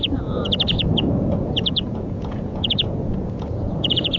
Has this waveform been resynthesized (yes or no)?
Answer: yes